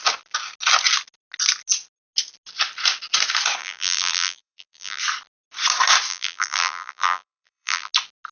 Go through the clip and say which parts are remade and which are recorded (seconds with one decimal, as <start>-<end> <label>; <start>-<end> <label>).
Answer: 0.0-3.6 recorded; 3.6-5.0 remade; 5.0-6.1 recorded; 6.1-7.9 remade; 7.9-8.3 recorded